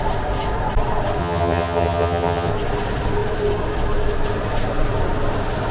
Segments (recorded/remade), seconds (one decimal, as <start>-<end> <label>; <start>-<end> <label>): 0.0-1.2 recorded; 1.2-2.5 remade; 2.5-5.7 recorded